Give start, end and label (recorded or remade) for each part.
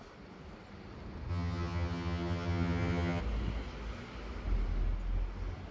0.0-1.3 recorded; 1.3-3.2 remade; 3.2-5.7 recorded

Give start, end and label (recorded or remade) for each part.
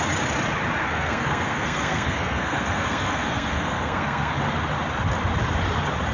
0.0-0.8 recorded; 0.8-4.3 remade; 4.3-6.1 recorded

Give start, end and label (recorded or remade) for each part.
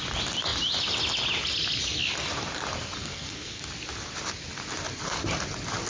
0.0-3.0 recorded; 3.0-3.6 remade; 3.6-5.9 recorded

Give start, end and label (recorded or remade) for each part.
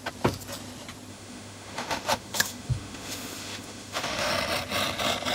0.0-1.1 recorded; 1.1-4.3 remade; 4.3-5.3 recorded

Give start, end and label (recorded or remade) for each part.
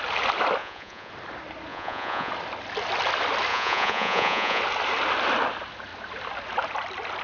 0.0-0.6 recorded; 0.6-1.1 remade; 1.1-1.7 recorded; 1.7-2.3 remade; 2.3-3.5 recorded; 3.5-4.6 remade; 4.6-7.2 recorded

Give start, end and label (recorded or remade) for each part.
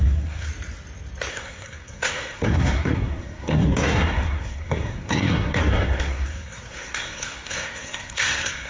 0.0-0.5 remade; 0.5-1.3 recorded; 1.3-8.7 remade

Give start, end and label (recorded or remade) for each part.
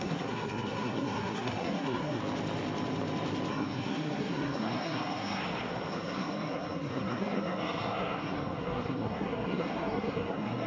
0.0-2.2 remade; 2.2-3.5 recorded; 3.5-5.4 remade; 5.4-5.9 recorded; 5.9-10.7 remade